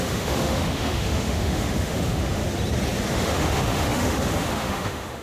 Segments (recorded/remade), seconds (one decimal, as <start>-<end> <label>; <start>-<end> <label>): 0.0-2.4 remade; 2.4-3.1 recorded; 3.1-5.2 remade